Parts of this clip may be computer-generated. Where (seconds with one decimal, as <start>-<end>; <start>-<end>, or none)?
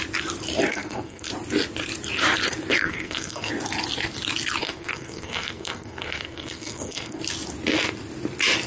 0.7-1.3; 2.8-3.5; 4.6-7.2